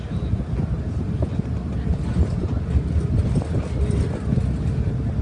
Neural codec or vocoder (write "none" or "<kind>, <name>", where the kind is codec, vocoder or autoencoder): none